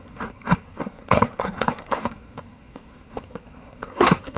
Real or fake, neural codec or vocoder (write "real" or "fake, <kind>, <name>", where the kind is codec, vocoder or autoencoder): fake, codec, SNAC